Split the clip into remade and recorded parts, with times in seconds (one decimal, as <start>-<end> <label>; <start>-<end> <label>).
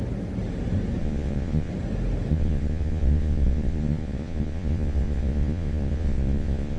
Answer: 0.0-1.0 recorded; 1.0-1.7 remade; 1.7-2.3 recorded; 2.3-6.8 remade